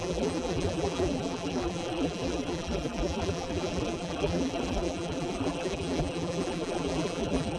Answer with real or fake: fake